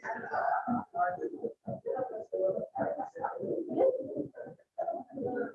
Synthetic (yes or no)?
no